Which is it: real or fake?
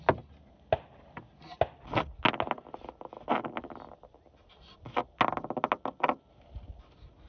real